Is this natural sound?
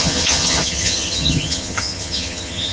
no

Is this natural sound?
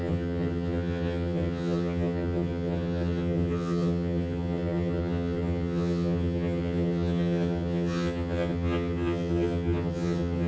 no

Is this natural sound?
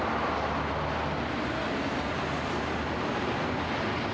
yes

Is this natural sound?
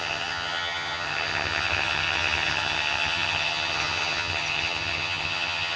no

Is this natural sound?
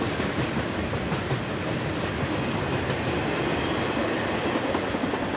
yes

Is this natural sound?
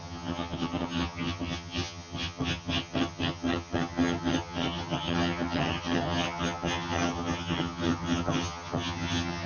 no